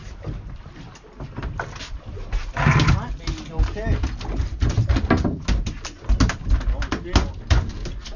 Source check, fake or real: real